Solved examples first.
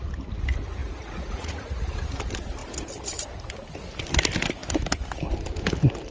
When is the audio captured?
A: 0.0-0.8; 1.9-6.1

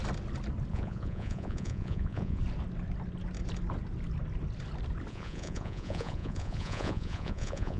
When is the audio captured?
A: 0.0-0.7; 2.4-5.1